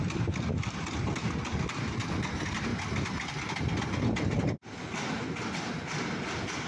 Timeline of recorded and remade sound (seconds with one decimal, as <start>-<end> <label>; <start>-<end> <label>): 0.0-6.7 recorded